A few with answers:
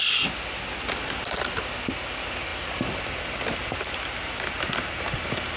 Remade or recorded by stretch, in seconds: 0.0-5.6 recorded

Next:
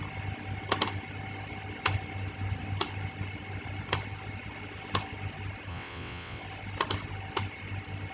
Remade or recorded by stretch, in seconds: 0.0-5.7 recorded; 5.7-6.4 remade; 6.4-8.1 recorded